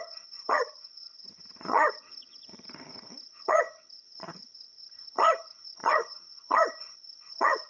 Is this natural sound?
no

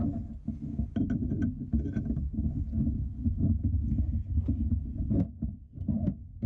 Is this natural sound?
yes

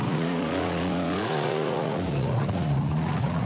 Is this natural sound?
no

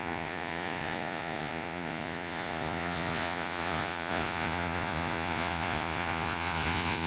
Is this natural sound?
no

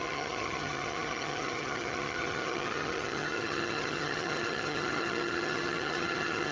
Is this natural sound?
no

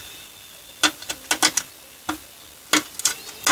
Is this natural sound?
yes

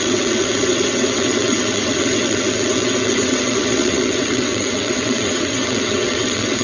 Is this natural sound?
no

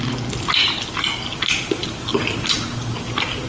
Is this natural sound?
yes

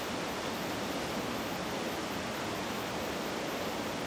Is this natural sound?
yes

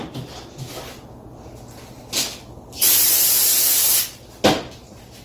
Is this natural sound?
yes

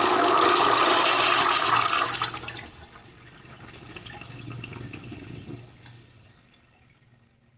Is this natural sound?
yes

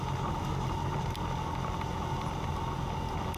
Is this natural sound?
yes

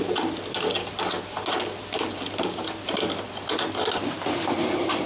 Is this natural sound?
yes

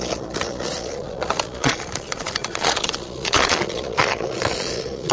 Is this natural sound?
no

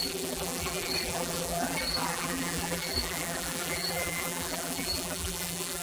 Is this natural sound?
no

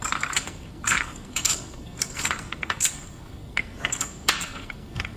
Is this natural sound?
no